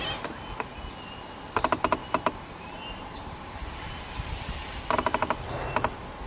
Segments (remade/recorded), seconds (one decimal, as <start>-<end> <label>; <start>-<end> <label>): 0.0-2.0 recorded; 2.0-5.7 remade; 5.7-6.3 recorded